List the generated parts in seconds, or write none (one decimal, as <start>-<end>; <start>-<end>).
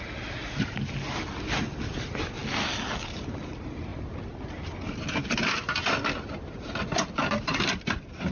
none